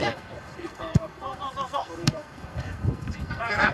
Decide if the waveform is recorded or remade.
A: remade